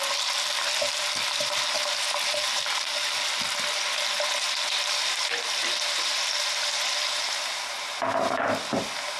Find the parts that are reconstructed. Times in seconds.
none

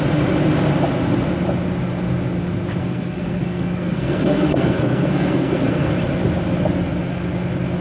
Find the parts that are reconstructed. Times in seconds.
2.8-5.9 (codec, SNAC)

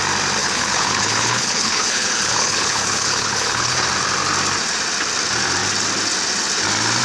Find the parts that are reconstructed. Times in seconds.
0.4-3.8 (codec, HILCodec)

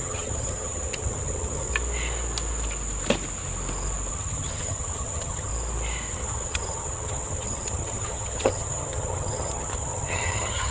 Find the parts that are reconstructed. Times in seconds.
0.0-1.7 (vocoder, HiFi-GAN); 4.1-5.5; 6.1-10.7

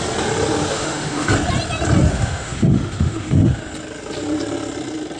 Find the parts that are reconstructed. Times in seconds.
0.7-1.3 (autoencoder, DAC-VAE); 2.1-3.7

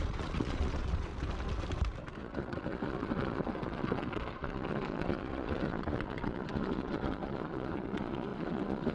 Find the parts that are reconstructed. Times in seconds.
0.0-1.1 (vocoder, Vocos); 2.2-8.9